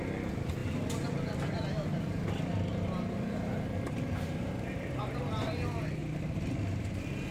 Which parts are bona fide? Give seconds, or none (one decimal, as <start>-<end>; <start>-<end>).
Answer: 0.0-7.3